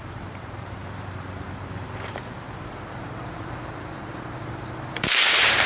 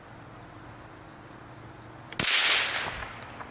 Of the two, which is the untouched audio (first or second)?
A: second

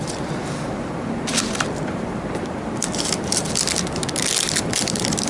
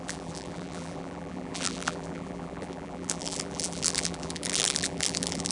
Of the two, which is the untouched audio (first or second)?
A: first